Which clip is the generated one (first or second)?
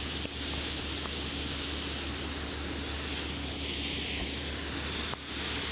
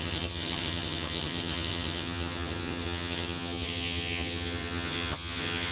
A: second